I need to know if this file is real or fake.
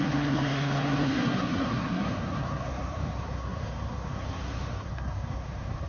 fake